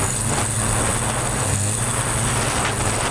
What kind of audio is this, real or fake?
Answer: real